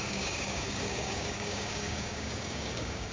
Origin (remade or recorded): remade